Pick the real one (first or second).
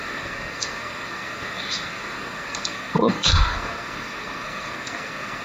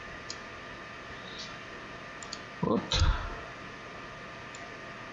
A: second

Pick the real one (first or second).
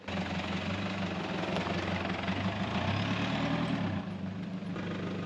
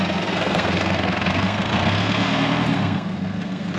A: first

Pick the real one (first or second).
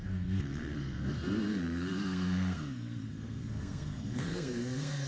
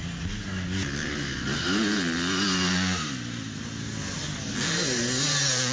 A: second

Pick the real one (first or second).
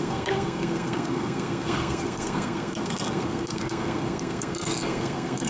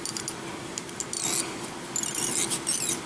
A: second